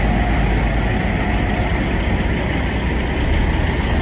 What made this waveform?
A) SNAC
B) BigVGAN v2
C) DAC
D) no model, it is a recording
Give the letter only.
D